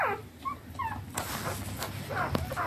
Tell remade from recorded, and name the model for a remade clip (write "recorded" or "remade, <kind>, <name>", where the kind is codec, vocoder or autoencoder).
recorded